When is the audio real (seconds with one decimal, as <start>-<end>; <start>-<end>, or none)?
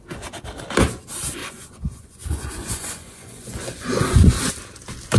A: 0.0-1.4; 4.5-5.2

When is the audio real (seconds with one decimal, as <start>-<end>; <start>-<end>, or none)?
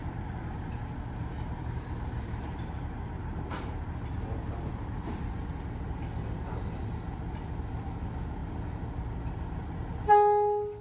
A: 5.2-10.8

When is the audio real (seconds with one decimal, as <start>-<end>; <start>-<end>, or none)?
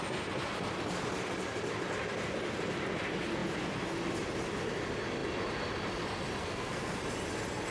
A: 0.0-6.4; 7.0-7.7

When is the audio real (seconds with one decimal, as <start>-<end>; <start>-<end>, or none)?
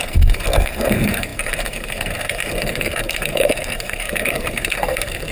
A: none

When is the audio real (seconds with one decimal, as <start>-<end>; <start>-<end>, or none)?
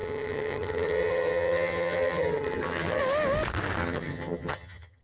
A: 3.0-3.8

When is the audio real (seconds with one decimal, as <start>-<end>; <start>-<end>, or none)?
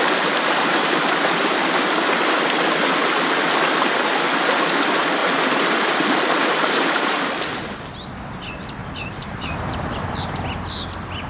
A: 0.0-5.2; 5.9-8.8; 10.1-11.3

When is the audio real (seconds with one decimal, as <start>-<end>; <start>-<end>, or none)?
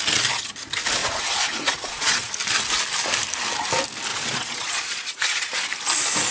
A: 0.0-1.0; 2.3-4.1; 5.5-6.3